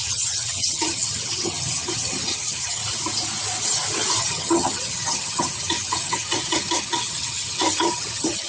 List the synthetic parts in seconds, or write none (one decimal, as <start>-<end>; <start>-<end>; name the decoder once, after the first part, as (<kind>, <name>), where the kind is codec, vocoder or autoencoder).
0.0-2.8 (vocoder, HiFi-GAN); 4.2-8.5